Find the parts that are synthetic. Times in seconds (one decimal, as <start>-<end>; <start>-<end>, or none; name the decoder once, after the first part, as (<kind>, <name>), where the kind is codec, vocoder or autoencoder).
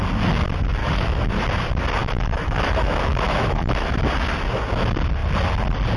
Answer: 0.8-1.3 (autoencoder, DAC-VAE); 2.0-4.0